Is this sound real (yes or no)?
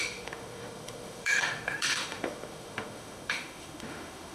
no